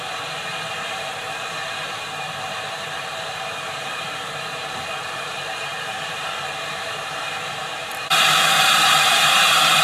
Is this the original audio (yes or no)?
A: no